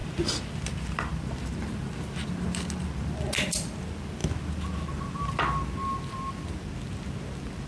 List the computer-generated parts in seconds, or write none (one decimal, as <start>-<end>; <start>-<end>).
none